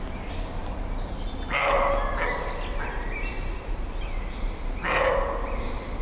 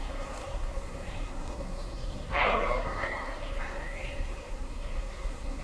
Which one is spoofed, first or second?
second